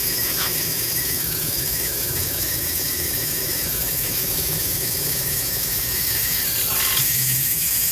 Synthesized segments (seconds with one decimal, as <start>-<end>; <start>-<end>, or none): 0.0-6.4; 7.0-7.9